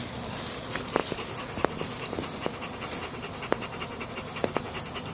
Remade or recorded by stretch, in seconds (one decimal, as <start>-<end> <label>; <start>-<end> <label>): 0.0-5.1 recorded